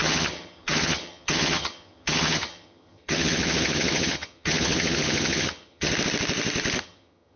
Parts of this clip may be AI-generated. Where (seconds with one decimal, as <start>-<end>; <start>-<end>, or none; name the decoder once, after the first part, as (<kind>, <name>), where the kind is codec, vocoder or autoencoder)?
0.0-5.9 (vocoder, HiFi-GAN); 6.8-7.4